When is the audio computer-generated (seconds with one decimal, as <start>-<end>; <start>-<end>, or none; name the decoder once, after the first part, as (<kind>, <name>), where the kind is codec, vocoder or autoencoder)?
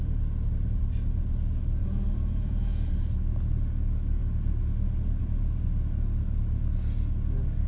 1.8-2.9 (vocoder, Vocos)